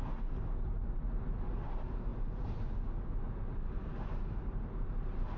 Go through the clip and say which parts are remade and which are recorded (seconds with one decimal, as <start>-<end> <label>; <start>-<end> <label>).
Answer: 0.0-5.4 recorded